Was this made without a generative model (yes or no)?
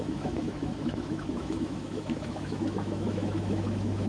no